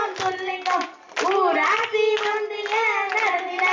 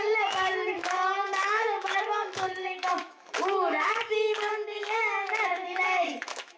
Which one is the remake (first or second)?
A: second